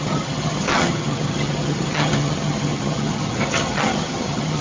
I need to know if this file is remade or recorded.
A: remade